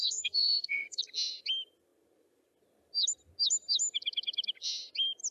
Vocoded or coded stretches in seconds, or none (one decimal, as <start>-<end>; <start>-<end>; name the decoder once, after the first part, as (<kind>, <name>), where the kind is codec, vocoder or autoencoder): 0.0-1.0 (codec, SNAC)